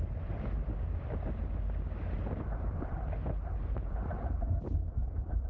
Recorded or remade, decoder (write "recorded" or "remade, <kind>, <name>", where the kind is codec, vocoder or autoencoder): recorded